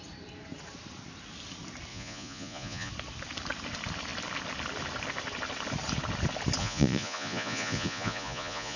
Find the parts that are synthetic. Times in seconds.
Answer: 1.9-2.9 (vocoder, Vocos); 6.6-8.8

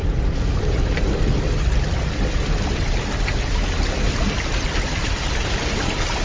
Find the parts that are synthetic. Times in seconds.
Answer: none

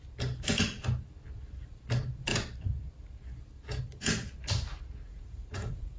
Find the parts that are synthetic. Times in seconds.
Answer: 5.1-6.0 (vocoder, Vocos)